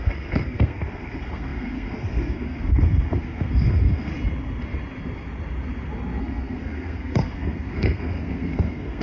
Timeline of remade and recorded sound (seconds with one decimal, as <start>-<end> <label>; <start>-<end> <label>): 0.0-4.1 remade; 4.1-6.2 recorded; 6.2-9.0 remade